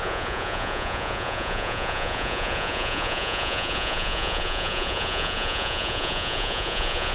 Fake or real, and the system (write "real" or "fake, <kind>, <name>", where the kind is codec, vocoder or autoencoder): fake, vocoder, Vocos